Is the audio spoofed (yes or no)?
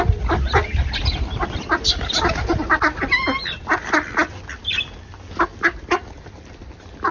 no